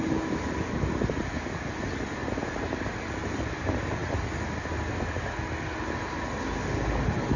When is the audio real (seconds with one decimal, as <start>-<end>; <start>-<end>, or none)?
0.0-7.4